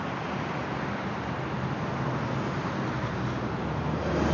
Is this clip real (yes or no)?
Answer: yes